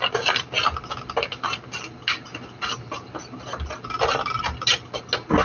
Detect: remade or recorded recorded